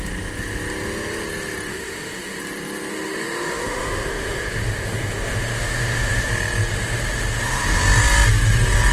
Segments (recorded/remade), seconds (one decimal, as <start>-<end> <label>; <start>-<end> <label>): 0.0-1.7 recorded; 1.7-2.4 remade; 2.4-2.9 recorded; 2.9-6.3 remade; 6.3-6.7 recorded; 6.7-7.8 remade; 7.8-8.9 recorded

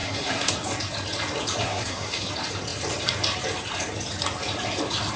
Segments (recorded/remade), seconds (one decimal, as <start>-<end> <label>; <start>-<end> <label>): 0.0-0.5 remade; 0.5-1.6 recorded; 1.6-2.3 remade; 2.3-5.2 recorded

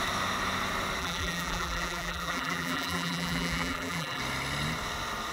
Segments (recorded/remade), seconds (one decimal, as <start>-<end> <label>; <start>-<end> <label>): 0.0-1.0 recorded; 1.0-4.2 remade; 4.2-5.3 recorded